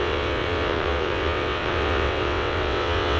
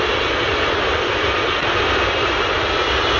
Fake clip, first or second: first